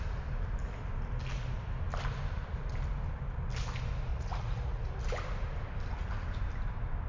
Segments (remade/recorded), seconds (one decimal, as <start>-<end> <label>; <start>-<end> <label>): 0.0-4.1 recorded; 4.1-4.9 remade; 4.9-7.1 recorded